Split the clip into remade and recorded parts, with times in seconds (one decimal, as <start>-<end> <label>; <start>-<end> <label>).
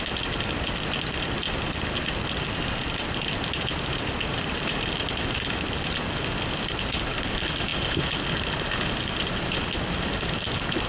0.0-10.9 recorded